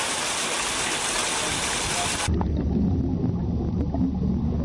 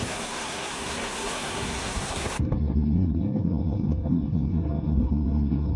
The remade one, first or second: second